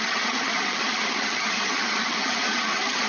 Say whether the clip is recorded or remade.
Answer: remade